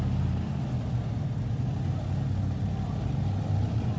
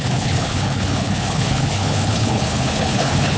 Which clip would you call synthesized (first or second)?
second